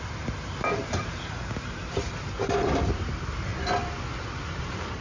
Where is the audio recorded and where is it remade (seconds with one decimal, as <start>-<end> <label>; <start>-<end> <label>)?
0.0-3.5 remade; 3.5-4.6 recorded; 4.6-5.0 remade